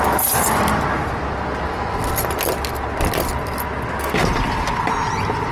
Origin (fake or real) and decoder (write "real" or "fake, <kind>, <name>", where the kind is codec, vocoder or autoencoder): real